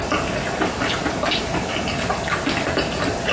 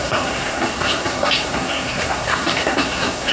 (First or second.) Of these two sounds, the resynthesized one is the second